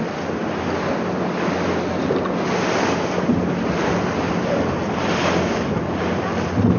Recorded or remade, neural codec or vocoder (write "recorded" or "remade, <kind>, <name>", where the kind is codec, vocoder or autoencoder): recorded